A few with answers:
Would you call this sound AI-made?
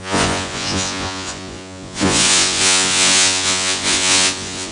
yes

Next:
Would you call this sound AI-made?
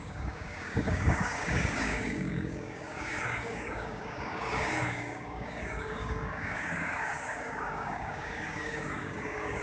yes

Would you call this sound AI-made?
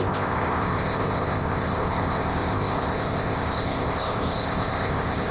yes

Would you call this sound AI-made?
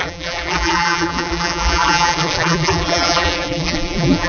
yes